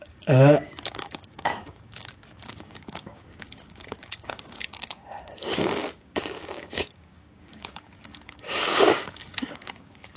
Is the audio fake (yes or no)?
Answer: yes